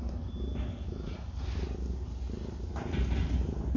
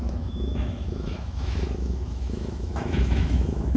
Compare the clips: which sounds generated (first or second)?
second